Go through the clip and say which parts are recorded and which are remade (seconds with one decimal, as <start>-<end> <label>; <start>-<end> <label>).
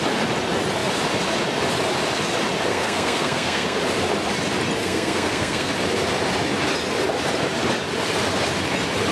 0.0-2.7 recorded; 2.7-3.8 remade; 3.8-4.8 recorded; 4.8-5.7 remade; 5.7-9.1 recorded